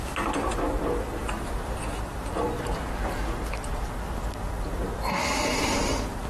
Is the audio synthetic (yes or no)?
no